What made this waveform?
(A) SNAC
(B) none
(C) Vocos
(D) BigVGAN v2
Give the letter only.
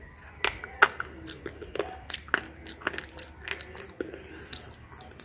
B